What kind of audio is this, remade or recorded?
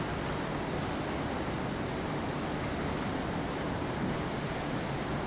recorded